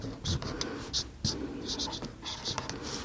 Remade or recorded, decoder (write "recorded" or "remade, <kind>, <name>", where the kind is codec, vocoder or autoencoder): recorded